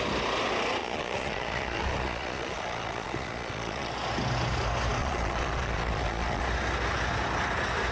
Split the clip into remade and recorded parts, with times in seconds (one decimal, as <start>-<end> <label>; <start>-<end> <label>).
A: 0.0-0.8 recorded; 0.8-3.9 remade; 3.9-5.0 recorded; 5.0-6.4 remade; 6.4-7.9 recorded